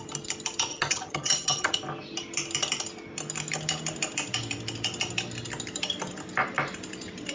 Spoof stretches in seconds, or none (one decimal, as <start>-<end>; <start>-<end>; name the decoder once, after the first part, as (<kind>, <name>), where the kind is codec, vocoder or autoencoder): 0.7-1.7 (vocoder, HiFi-GAN)